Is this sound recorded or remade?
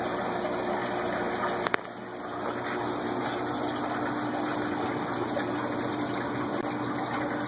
recorded